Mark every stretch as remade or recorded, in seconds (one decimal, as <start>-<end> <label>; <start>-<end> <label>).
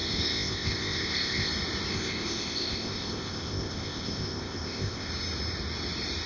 0.0-1.5 remade; 1.5-1.9 recorded; 1.9-5.1 remade; 5.1-6.3 recorded